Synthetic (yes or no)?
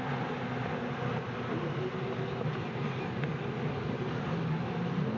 no